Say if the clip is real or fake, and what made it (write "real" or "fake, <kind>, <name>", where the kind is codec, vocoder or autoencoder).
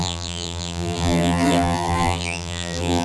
fake, vocoder, BigVGAN v2